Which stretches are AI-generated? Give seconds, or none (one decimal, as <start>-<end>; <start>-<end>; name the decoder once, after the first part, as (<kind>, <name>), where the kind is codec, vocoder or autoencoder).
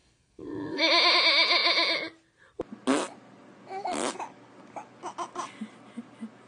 0.0-0.8 (codec, SNAC)